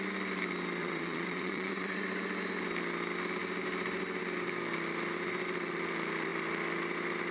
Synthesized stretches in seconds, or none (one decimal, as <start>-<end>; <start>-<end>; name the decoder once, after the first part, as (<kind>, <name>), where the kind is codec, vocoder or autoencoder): 0.8-2.0 (vocoder, WaveNeXt)